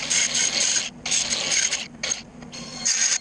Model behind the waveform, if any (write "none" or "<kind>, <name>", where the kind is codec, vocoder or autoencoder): none